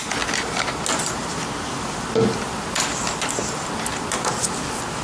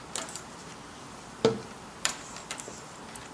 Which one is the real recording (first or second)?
first